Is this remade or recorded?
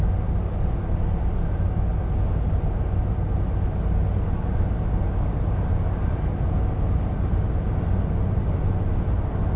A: recorded